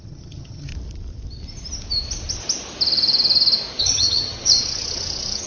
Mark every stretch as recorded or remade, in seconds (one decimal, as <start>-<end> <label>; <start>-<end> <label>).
0.0-0.7 remade; 0.7-3.8 recorded; 3.8-5.5 remade